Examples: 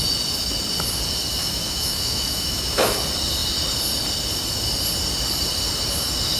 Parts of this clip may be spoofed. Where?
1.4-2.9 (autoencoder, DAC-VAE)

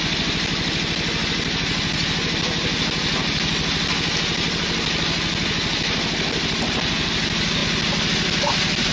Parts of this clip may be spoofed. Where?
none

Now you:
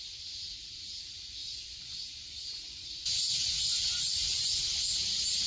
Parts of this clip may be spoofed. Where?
1.4-4.6 (vocoder, Vocos)